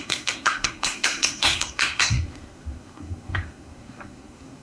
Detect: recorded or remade remade